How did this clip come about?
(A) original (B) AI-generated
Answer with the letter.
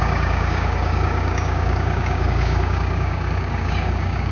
B